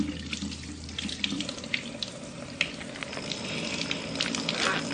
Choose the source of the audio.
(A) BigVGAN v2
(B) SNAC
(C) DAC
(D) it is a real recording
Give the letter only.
D